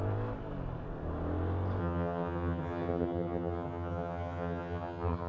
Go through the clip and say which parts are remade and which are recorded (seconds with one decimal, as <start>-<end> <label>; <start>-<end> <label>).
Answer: 0.0-1.8 recorded; 1.8-5.3 remade